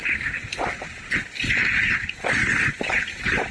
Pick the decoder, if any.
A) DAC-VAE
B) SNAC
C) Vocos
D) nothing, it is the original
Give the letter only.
D